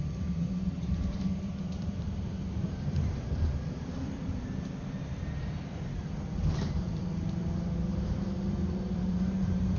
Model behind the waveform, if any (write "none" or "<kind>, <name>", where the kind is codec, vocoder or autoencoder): vocoder, BigVGAN v2